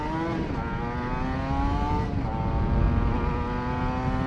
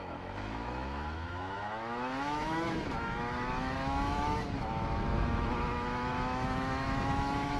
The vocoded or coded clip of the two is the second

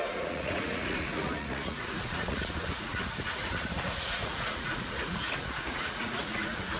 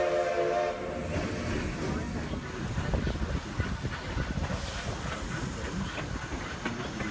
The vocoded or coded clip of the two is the first